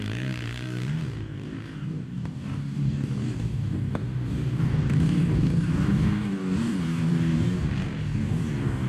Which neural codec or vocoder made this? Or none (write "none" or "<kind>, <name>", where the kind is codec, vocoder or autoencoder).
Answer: codec, DAC